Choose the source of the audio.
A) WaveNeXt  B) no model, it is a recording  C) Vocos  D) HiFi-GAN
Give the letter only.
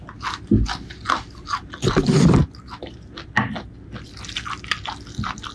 B